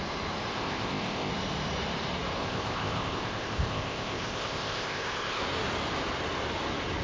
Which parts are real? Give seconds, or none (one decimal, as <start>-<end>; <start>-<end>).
0.0-0.5; 1.3-2.4; 5.4-7.0